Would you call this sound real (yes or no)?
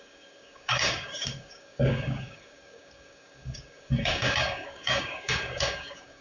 no